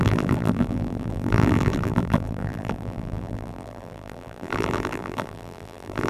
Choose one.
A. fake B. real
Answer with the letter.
A